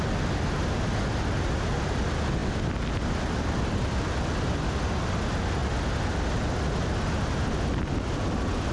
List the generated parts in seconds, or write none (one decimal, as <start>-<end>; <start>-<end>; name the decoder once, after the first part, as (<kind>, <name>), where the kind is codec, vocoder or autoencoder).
none